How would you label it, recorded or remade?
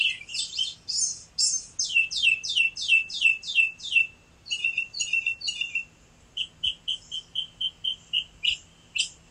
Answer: recorded